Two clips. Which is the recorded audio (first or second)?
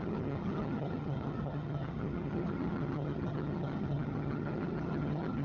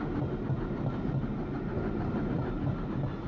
second